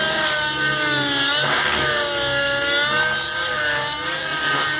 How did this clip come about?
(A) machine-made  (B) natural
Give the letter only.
B